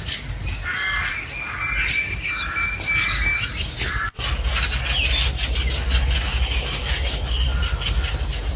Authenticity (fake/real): real